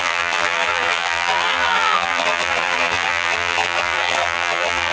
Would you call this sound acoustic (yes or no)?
no